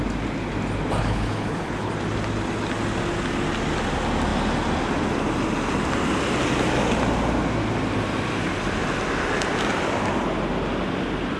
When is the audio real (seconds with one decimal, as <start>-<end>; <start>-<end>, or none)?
0.0-1.0; 1.9-11.4